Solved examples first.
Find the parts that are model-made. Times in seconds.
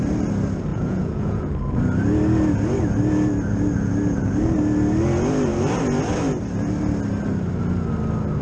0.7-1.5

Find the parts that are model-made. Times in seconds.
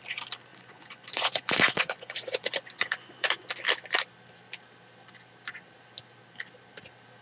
0.5-3.5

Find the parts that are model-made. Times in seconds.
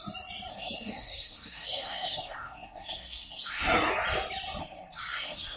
0.5-3.9; 4.6-5.6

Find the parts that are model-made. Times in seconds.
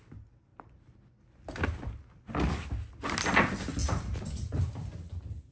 none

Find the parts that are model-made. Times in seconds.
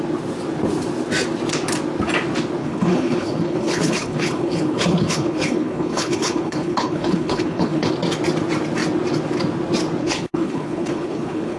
2.6-7.9; 10.0-11.6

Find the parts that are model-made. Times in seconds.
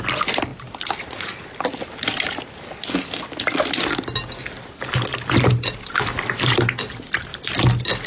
none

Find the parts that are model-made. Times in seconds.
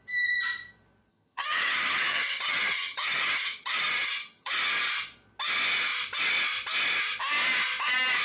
1.1-4.5